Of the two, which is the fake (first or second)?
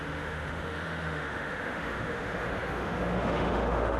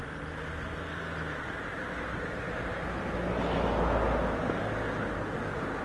first